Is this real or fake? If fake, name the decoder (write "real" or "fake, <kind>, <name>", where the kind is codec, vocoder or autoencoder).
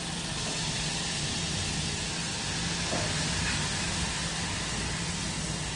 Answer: real